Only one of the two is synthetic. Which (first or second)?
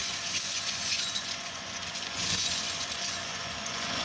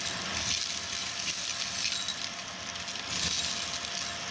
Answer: first